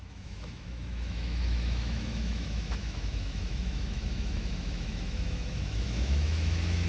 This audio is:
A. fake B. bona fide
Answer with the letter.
A